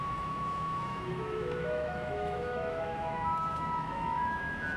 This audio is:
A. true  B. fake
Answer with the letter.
B